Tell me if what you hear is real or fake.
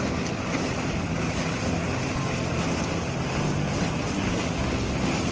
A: real